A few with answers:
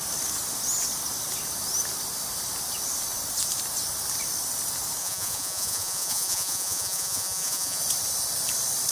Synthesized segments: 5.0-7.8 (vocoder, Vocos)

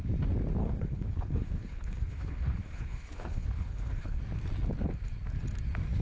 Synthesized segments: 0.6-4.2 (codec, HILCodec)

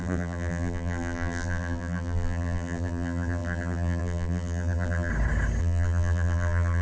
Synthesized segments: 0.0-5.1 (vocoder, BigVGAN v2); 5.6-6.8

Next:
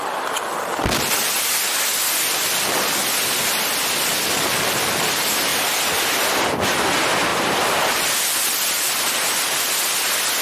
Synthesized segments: 5.5-6.3 (vocoder, BigVGAN v2); 7.3-7.8